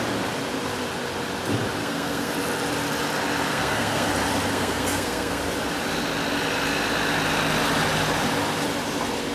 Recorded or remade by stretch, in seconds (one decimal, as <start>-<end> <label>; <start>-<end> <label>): 0.0-1.8 recorded; 1.8-2.3 remade; 2.3-3.5 recorded; 3.5-4.1 remade; 4.1-4.5 recorded; 4.5-5.4 remade; 5.4-9.3 recorded